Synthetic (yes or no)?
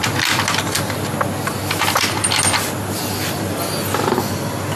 no